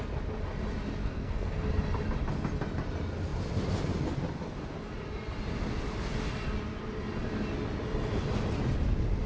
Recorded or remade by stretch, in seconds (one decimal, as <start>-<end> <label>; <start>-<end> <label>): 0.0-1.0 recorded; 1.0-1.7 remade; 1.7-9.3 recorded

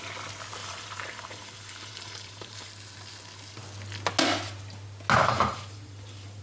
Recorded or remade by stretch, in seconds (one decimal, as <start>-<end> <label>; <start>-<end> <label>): 0.0-0.6 recorded; 0.6-2.7 remade; 2.7-5.2 recorded; 5.2-6.4 remade

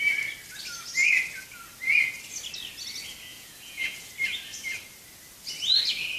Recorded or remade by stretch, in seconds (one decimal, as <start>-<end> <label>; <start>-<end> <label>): 0.0-3.3 recorded; 3.3-4.1 remade; 4.1-6.2 recorded

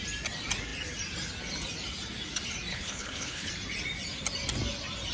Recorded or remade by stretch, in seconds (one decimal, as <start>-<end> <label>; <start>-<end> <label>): 0.0-2.7 recorded; 2.7-3.5 remade; 3.5-5.1 recorded

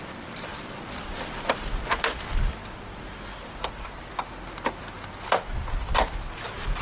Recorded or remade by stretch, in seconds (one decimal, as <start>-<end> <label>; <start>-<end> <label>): 0.0-6.8 recorded

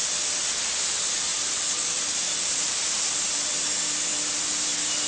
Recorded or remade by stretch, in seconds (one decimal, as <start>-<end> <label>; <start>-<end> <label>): 0.0-1.3 recorded; 1.3-3.5 remade; 3.5-5.1 recorded